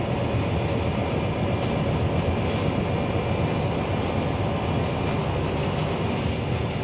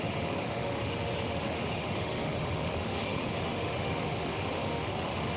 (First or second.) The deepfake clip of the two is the second